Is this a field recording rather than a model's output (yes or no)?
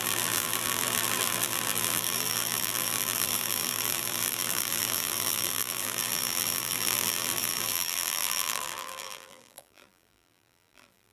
no